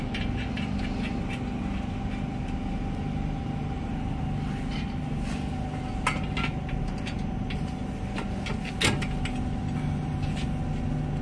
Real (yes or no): yes